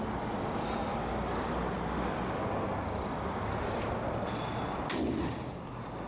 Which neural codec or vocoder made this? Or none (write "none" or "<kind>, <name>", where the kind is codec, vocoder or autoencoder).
none